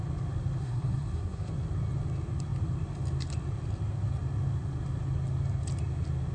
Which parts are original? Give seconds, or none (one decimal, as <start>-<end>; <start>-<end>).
0.0-0.6; 1.5-6.3